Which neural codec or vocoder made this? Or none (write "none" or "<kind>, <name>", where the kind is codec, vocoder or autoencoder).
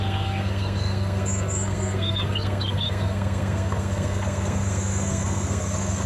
codec, SNAC